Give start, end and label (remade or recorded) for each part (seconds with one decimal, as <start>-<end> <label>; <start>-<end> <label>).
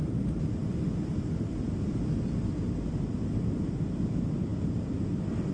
0.0-5.5 recorded